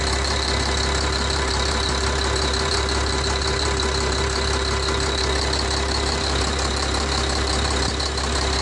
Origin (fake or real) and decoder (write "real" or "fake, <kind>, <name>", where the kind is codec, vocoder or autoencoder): fake, vocoder, BigVGAN v2